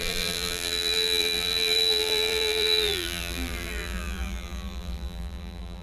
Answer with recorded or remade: remade